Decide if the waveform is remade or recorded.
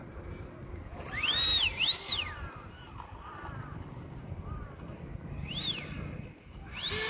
recorded